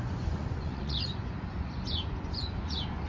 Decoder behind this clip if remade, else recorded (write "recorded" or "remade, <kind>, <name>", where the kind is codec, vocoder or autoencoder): remade, vocoder, Vocos